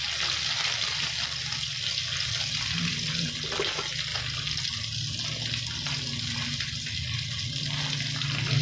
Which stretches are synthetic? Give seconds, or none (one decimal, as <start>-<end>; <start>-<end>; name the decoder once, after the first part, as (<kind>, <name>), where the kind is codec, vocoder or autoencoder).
none